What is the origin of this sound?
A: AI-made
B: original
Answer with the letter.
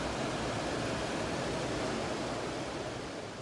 A